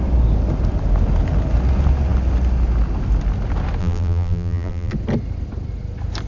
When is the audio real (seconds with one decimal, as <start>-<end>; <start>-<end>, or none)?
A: 0.0-3.8; 4.9-6.3